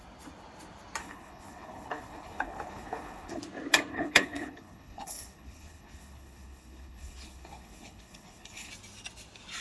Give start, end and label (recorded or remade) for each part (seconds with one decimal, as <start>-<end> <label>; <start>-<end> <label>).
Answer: 0.0-1.0 recorded; 1.0-3.4 remade; 3.4-3.9 recorded; 3.9-8.7 remade; 8.7-9.6 recorded